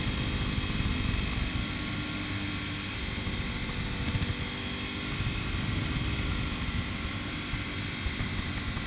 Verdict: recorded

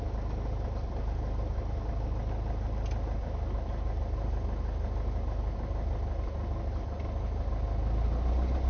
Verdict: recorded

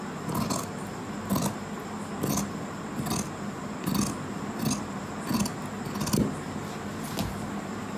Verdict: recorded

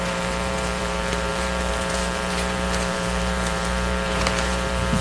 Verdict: remade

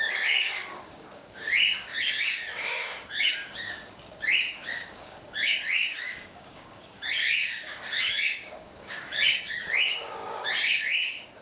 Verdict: remade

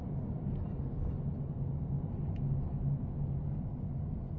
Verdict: recorded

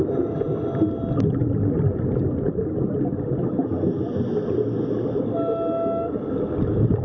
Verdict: recorded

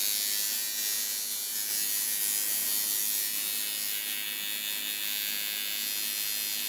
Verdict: recorded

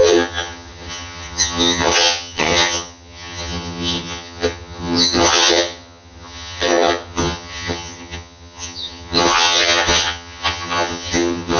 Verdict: remade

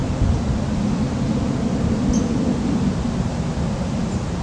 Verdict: recorded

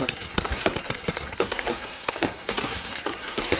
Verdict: remade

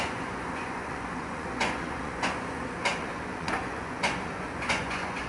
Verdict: remade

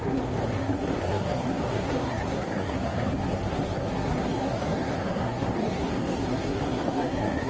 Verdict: remade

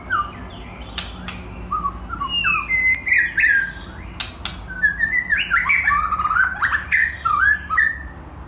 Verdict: recorded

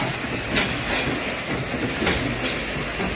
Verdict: recorded